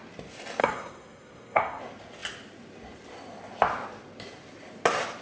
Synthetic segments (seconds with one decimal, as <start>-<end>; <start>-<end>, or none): 0.6-1.8